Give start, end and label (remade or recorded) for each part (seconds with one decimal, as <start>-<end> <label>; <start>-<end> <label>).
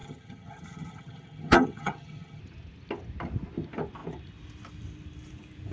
0.0-2.4 remade; 2.4-5.7 recorded